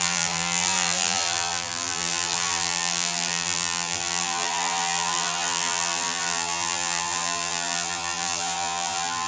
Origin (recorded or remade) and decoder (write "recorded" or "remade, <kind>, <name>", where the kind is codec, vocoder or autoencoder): remade, vocoder, BigVGAN v2